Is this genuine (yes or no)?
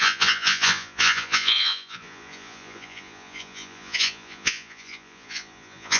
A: no